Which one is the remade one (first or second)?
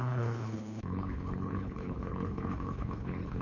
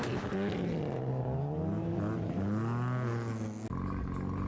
first